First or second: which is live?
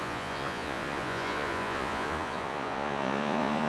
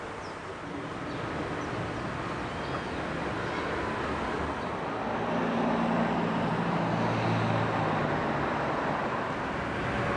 second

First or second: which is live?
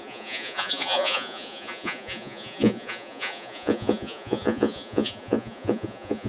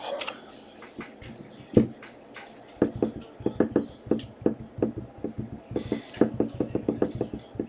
second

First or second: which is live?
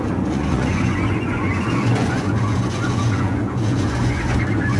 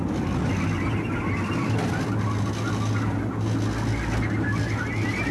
second